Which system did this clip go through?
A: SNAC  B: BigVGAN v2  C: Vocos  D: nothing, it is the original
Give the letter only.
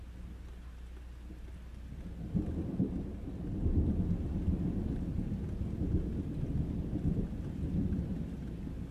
D